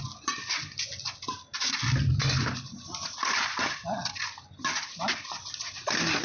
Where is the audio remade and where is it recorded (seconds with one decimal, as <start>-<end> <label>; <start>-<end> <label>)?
0.0-6.2 recorded